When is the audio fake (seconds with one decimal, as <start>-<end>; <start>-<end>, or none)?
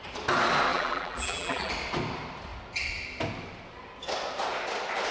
0.7-1.7